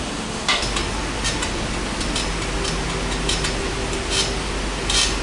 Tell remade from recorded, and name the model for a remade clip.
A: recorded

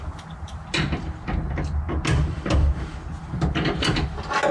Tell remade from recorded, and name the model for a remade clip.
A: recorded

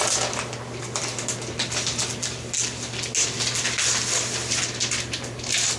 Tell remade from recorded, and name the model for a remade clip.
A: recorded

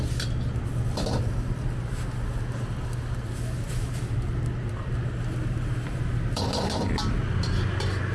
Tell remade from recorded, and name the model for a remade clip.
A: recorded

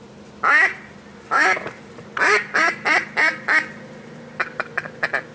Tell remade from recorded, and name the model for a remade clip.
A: recorded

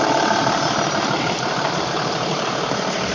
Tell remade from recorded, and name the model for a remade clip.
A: recorded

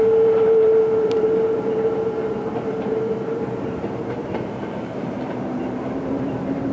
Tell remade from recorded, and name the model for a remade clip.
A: remade, vocoder, BigVGAN v2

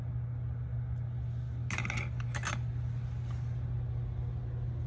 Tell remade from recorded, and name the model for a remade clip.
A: recorded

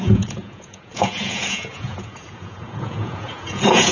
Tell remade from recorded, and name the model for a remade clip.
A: remade, vocoder, Vocos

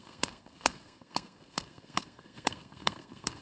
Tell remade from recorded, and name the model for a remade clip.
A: remade, codec, SNAC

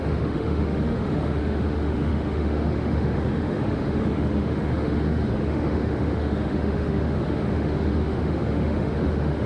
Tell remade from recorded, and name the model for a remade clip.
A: remade, autoencoder, DAC-VAE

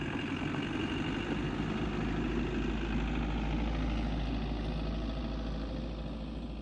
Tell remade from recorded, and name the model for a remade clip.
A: recorded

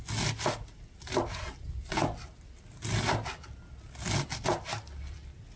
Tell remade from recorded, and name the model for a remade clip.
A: recorded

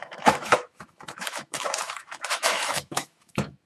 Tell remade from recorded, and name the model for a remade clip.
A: remade, autoencoder, DAC-VAE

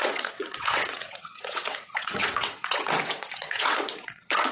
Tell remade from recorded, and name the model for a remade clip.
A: remade, vocoder, WaveNeXt